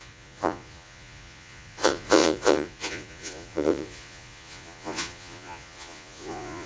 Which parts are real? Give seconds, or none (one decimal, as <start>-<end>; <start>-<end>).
none